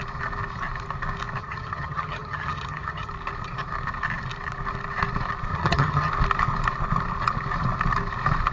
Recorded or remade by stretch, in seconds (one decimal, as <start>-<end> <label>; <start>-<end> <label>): 0.0-1.4 recorded; 1.4-3.1 remade; 3.1-5.5 recorded; 5.5-6.1 remade; 6.1-8.5 recorded